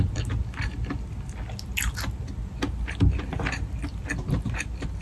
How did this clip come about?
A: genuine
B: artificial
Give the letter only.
A